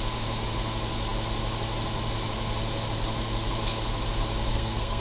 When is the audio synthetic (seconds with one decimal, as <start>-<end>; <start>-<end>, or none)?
4.5-5.0